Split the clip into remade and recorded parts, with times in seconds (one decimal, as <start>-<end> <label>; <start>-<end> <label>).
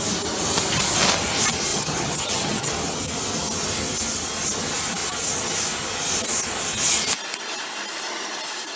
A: 0.0-1.7 recorded; 1.7-2.7 remade; 2.7-8.8 recorded